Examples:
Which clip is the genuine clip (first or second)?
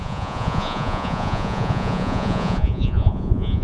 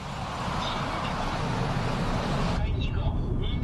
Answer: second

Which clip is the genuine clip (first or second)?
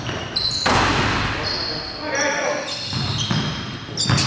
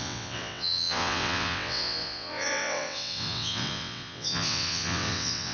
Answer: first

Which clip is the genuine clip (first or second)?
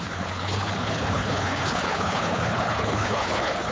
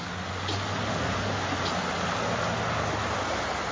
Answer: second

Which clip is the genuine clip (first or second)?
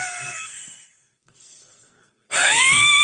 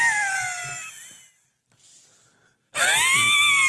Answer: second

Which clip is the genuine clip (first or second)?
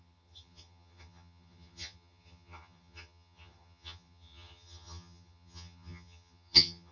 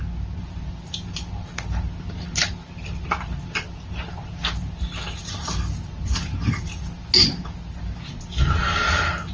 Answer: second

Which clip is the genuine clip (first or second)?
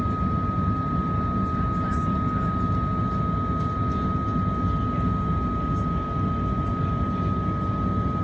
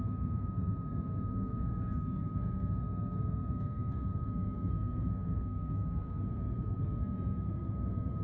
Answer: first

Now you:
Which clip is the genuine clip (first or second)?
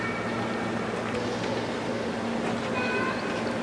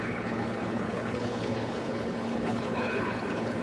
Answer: first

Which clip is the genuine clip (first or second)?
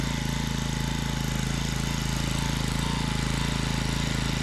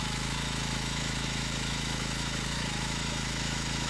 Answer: first